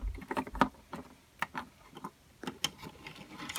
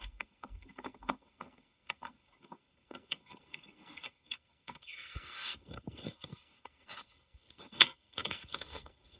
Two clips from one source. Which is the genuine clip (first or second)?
first